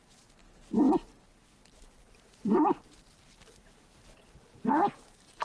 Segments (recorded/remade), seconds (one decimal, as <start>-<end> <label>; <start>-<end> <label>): 0.0-0.4 recorded; 0.4-1.1 remade; 1.1-1.6 recorded; 1.6-4.7 remade; 4.7-5.4 recorded